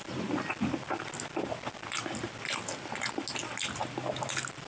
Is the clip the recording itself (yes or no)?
yes